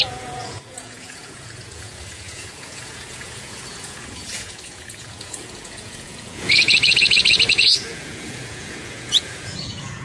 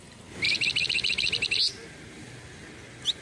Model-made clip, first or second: first